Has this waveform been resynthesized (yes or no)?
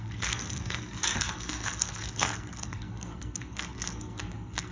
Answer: yes